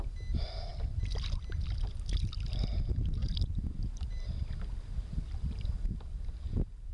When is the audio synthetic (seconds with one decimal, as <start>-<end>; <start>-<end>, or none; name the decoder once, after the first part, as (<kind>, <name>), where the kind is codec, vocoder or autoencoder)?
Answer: none